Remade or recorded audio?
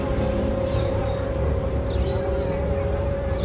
remade